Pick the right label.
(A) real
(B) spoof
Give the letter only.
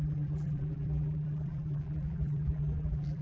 B